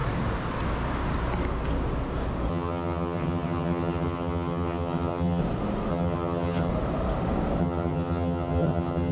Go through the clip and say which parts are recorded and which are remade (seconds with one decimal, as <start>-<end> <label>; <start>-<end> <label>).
0.0-2.5 recorded; 2.5-5.4 remade; 5.4-5.9 recorded; 5.9-6.7 remade; 6.7-7.6 recorded; 7.6-9.1 remade